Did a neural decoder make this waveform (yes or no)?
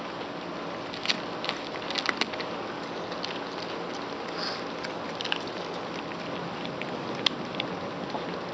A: no